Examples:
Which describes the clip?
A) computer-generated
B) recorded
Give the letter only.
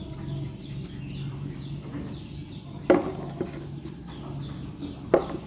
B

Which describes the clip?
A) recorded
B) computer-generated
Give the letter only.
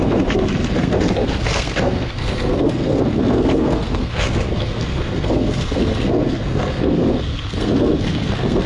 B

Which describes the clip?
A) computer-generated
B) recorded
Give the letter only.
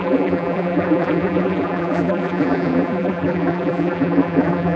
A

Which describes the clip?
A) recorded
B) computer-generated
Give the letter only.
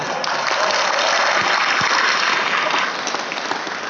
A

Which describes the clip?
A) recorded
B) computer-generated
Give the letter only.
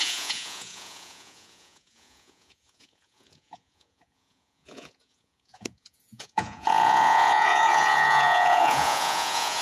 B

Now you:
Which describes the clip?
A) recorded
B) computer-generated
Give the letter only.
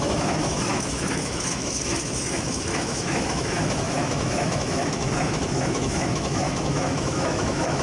B